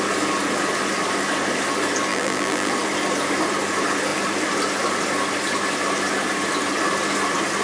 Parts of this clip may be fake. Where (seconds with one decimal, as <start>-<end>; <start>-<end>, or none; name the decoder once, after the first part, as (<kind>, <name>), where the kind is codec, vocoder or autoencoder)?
2.1-2.7 (vocoder, BigVGAN v2)